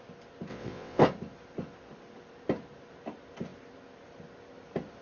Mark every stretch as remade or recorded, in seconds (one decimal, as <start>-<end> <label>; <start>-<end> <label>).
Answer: 0.0-0.5 recorded; 0.5-1.0 remade; 1.0-5.0 recorded